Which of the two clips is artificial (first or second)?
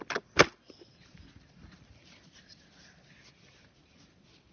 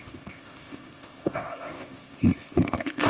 second